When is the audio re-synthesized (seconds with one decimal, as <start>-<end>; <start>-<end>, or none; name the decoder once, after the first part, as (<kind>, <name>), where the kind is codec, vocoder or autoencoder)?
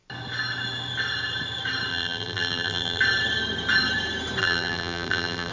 1.9-3.0 (vocoder, BigVGAN v2); 4.4-5.5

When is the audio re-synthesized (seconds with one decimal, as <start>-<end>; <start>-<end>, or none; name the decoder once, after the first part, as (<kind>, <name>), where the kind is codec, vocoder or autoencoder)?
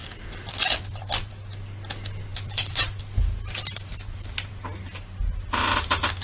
0.0-1.3 (vocoder, BigVGAN v2); 2.3-3.0; 3.9-4.5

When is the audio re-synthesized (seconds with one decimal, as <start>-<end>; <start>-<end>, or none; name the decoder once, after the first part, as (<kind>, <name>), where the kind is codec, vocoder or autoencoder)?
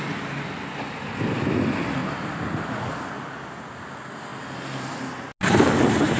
2.0-3.0 (vocoder, BigVGAN v2); 4.3-5.0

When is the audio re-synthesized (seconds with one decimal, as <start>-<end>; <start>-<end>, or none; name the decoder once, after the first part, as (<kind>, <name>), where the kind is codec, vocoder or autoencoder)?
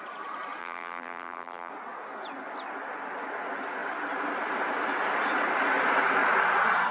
0.6-1.7 (vocoder, BigVGAN v2)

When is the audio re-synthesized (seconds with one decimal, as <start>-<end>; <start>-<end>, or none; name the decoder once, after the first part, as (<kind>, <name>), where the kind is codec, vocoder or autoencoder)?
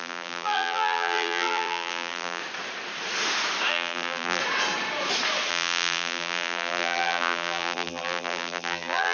0.0-2.4 (vocoder, BigVGAN v2); 3.7-4.4; 5.5-9.1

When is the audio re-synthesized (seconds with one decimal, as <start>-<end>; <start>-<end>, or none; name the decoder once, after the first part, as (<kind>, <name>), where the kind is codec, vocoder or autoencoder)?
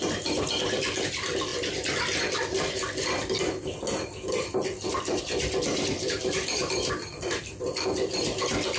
0.0-1.5 (vocoder, BigVGAN v2); 5.2-8.8